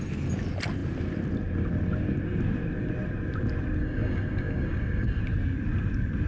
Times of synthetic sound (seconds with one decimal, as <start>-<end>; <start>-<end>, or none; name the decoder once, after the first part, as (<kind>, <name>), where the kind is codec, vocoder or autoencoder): 3.8-5.2 (codec, DAC)